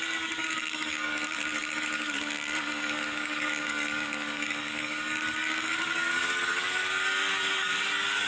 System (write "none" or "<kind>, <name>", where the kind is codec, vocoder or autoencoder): codec, DAC